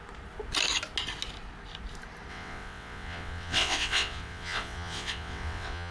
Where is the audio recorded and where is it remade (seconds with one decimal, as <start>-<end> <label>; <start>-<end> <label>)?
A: 0.0-2.3 recorded; 2.3-5.9 remade